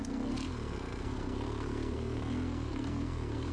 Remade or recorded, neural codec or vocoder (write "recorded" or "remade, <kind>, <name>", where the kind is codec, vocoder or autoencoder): remade, codec, SNAC